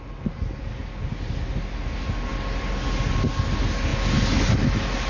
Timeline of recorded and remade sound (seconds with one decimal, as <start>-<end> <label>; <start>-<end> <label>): 0.0-5.1 recorded